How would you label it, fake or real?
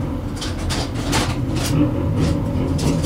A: real